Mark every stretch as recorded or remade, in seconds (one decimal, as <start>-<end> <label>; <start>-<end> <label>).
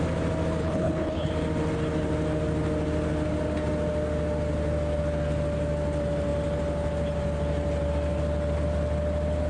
0.0-0.6 recorded; 0.6-1.3 remade; 1.3-9.5 recorded